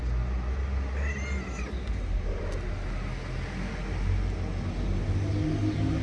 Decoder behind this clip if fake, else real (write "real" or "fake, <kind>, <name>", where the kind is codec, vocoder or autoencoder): real